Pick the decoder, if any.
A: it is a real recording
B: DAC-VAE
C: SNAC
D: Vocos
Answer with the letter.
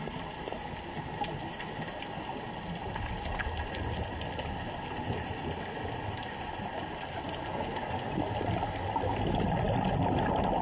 A